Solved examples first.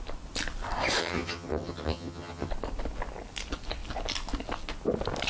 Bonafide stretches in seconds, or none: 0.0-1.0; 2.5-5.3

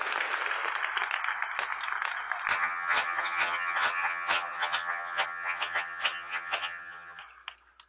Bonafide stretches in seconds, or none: 0.0-2.5; 7.2-7.9

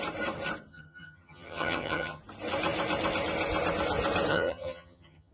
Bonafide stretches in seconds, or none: 0.0-0.7; 2.2-4.3